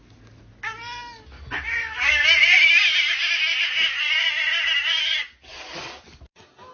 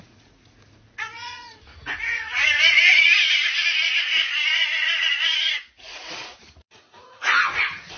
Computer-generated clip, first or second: second